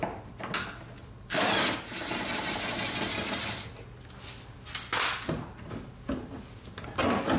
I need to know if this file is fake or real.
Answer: real